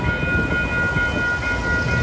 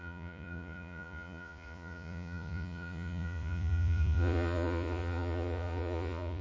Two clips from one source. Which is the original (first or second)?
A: first